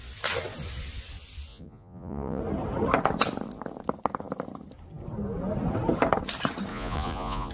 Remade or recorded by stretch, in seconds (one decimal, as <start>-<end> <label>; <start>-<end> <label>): 0.0-1.5 recorded; 1.5-2.4 remade; 2.4-6.7 recorded; 6.7-7.5 remade